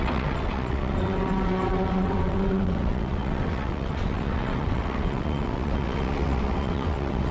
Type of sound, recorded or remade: remade